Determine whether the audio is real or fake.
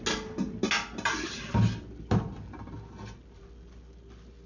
real